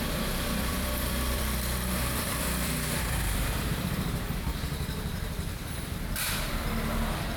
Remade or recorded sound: remade